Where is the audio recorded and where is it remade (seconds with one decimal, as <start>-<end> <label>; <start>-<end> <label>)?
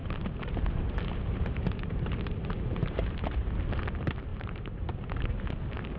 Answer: 0.0-3.5 remade; 3.5-4.3 recorded; 4.3-5.4 remade; 5.4-6.0 recorded